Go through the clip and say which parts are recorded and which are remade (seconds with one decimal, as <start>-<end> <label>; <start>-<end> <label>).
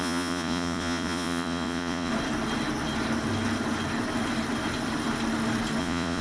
0.0-2.1 remade; 2.1-5.8 recorded; 5.8-6.2 remade